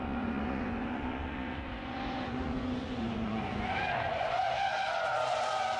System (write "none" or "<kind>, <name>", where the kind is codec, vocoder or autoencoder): vocoder, Vocos